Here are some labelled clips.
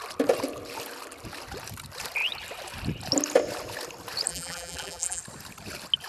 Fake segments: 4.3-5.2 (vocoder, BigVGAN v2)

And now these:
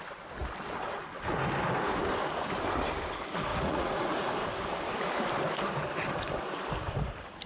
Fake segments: 3.5-4.3 (vocoder, Vocos)